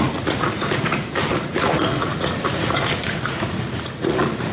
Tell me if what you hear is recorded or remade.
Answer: remade